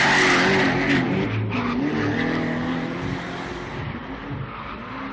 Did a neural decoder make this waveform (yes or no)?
no